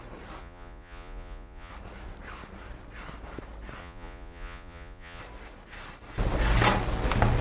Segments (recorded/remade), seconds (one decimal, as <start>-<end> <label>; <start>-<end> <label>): 0.0-0.4 recorded; 0.4-1.7 remade; 1.7-3.8 recorded; 3.8-5.2 remade; 5.2-7.4 recorded